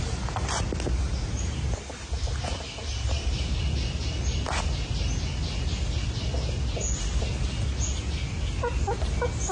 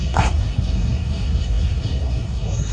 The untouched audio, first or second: first